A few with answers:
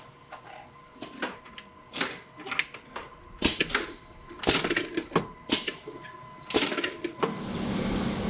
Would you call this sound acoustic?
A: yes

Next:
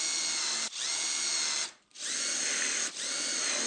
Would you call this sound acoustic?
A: yes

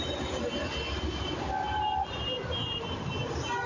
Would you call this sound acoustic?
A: yes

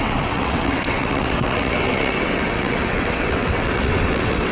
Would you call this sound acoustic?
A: no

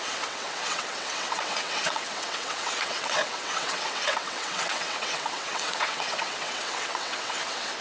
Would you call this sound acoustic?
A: no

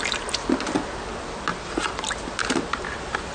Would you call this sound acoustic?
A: yes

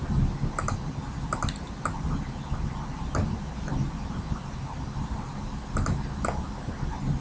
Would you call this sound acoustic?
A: yes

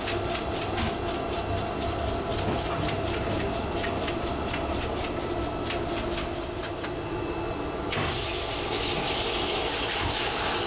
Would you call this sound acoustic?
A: yes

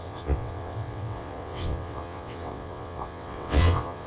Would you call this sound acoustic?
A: no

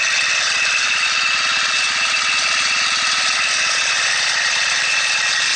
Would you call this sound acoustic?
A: yes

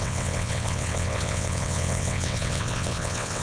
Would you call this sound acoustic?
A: no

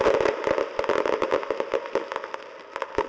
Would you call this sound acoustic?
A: yes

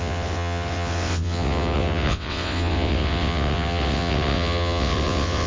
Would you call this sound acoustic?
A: no